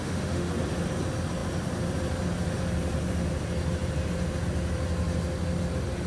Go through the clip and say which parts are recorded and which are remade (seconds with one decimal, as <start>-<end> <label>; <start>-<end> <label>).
0.0-0.5 remade; 0.5-6.1 recorded